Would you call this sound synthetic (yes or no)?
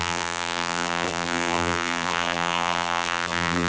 yes